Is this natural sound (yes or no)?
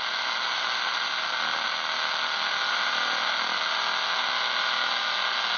yes